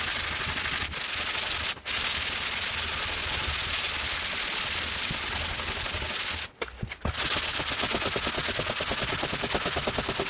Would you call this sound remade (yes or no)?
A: no